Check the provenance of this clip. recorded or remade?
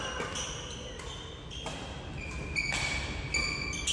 recorded